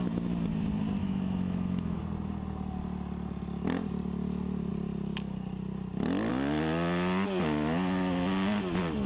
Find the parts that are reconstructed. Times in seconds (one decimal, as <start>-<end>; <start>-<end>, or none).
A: 1.0-2.0